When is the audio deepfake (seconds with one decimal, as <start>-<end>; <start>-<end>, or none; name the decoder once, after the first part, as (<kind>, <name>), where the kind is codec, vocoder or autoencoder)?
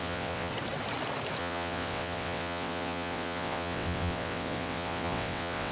0.0-0.5 (vocoder, WaveNeXt); 1.4-5.7